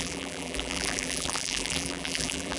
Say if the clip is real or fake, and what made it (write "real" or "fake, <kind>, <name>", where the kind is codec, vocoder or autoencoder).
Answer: fake, vocoder, BigVGAN v2